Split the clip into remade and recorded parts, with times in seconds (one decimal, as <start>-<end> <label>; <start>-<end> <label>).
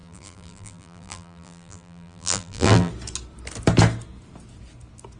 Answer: 0.0-2.9 remade; 2.9-5.2 recorded